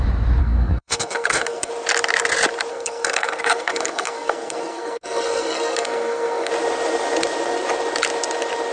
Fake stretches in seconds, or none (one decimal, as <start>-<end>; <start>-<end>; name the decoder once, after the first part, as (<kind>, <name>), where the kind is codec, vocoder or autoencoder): 0.4-1.7 (codec, SNAC); 2.7-6.5